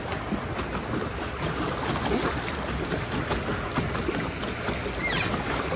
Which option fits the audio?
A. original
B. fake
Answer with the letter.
A